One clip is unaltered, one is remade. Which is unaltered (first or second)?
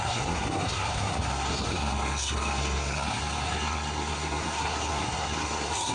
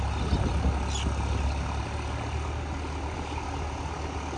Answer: second